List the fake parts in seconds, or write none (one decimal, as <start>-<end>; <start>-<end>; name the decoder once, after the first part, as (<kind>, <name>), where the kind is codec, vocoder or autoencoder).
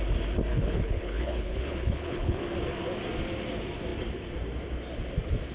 0.5-2.4 (codec, HILCodec)